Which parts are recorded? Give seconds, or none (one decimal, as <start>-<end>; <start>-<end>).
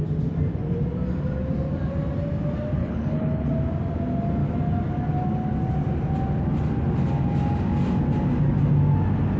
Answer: 0.0-2.8; 3.5-9.4